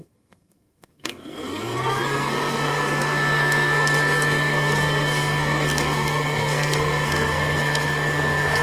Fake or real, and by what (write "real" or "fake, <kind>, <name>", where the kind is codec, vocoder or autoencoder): fake, codec, SNAC